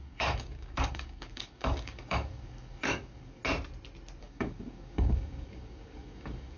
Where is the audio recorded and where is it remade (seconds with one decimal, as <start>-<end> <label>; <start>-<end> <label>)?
0.0-3.4 remade; 3.4-4.2 recorded; 4.2-6.6 remade